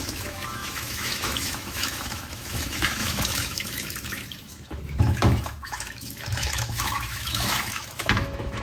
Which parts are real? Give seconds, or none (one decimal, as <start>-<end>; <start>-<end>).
none